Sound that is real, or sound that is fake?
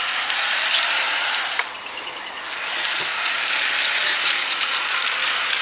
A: real